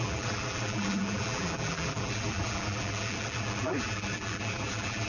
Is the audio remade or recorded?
remade